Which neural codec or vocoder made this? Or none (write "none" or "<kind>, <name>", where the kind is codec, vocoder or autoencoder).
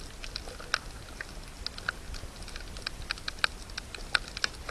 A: none